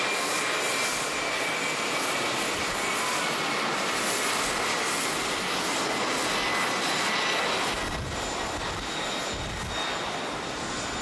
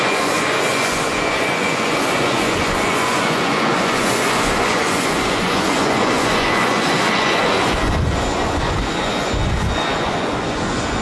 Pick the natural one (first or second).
first